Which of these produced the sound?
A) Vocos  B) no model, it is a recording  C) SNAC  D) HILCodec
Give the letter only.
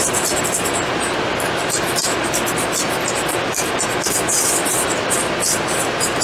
B